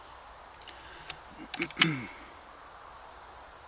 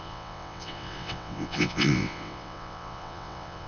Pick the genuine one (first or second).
first